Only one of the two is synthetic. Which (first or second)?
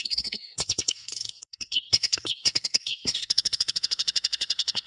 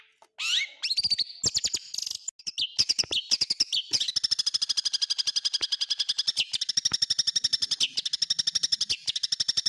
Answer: first